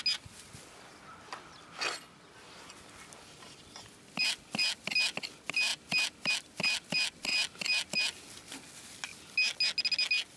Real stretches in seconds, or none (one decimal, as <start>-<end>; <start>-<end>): 0.0-10.4

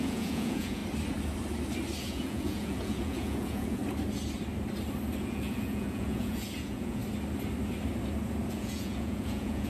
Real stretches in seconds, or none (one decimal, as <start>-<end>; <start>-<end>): 0.8-2.0; 3.8-5.2; 7.0-8.5

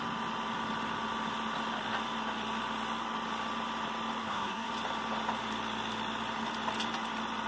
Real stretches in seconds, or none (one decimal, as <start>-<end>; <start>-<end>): 0.0-4.2; 4.7-7.5

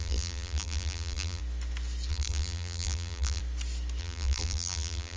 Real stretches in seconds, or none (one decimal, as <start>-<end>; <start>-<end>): 1.4-2.1; 3.4-4.0

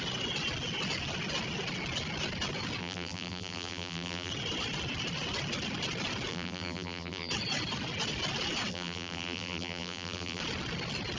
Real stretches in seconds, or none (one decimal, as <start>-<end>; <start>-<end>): 0.0-2.8; 4.3-6.3; 7.3-8.7; 10.4-11.2

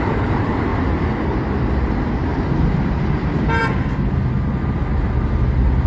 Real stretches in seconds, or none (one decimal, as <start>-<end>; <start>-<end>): 0.7-1.9; 3.6-5.9